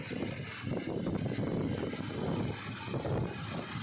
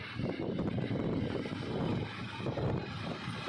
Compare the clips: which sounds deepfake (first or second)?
second